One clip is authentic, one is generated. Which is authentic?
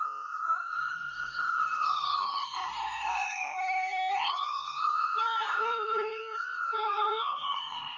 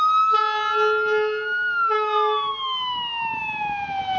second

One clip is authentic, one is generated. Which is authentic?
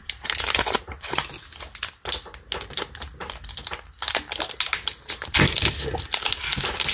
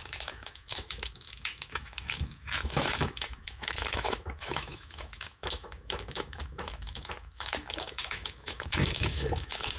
first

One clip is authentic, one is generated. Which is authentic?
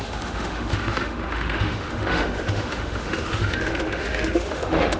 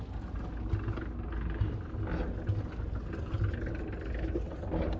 second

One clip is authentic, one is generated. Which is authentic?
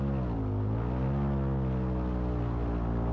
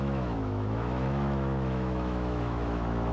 first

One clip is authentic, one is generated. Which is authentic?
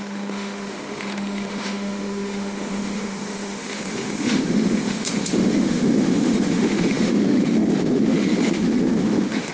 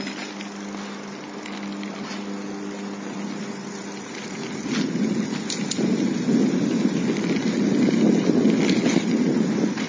second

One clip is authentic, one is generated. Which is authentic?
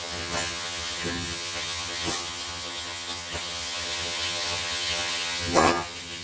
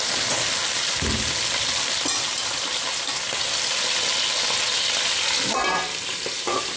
second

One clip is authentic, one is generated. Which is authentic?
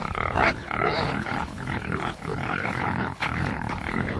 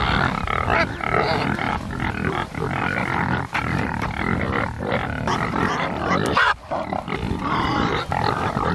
second